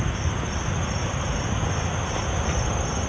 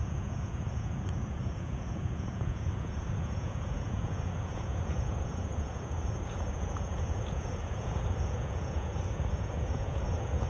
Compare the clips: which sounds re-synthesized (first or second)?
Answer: second